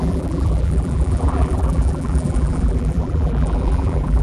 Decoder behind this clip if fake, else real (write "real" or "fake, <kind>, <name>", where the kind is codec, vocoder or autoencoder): fake, vocoder, BigVGAN v2